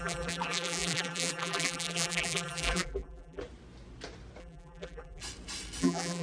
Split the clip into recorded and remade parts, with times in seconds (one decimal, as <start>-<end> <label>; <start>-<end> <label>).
0.0-3.4 remade; 3.4-4.4 recorded; 4.4-5.2 remade; 5.2-5.8 recorded; 5.8-6.2 remade